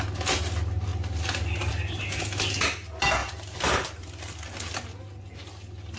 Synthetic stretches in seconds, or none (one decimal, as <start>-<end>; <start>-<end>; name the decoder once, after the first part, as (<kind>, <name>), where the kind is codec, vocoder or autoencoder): 3.2-4.8 (vocoder, BigVGAN v2)